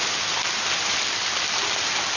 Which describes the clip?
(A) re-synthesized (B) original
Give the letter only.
B